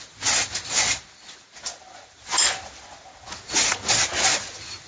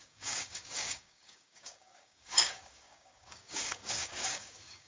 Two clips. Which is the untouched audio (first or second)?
first